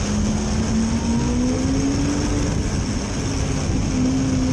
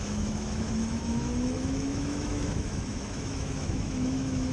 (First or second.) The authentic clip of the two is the first